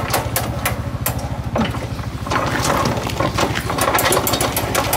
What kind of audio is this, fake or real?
real